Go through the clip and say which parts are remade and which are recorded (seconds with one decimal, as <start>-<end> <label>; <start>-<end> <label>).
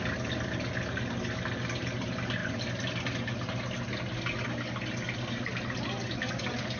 0.0-6.8 recorded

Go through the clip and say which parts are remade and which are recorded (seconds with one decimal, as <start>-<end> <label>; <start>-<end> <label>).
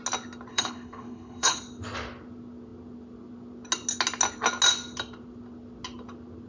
0.0-0.5 recorded; 0.5-1.6 remade; 1.6-6.5 recorded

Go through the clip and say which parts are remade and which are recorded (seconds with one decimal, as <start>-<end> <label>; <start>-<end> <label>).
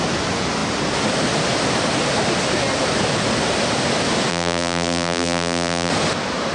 0.0-4.3 recorded; 4.3-5.9 remade; 5.9-6.5 recorded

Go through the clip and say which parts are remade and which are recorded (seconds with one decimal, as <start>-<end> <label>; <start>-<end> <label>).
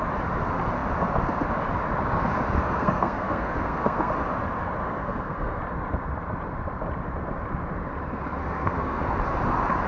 0.0-2.6 recorded; 2.6-4.1 remade; 4.1-4.8 recorded; 4.8-5.6 remade; 5.6-8.4 recorded; 8.4-9.0 remade; 9.0-9.9 recorded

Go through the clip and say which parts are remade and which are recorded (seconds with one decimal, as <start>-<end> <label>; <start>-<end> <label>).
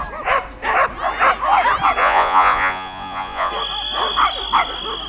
0.0-2.0 recorded; 2.0-3.5 remade; 3.5-5.1 recorded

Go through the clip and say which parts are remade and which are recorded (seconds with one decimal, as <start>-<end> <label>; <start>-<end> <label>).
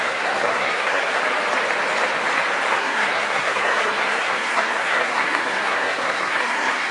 0.0-1.2 remade; 1.2-2.7 recorded; 2.7-6.9 remade